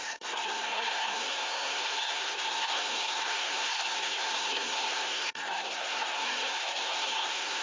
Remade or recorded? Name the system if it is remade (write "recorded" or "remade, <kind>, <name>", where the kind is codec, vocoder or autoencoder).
remade, codec, SNAC